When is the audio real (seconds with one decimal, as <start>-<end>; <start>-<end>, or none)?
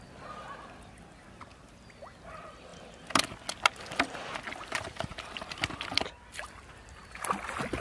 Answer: 2.7-4.4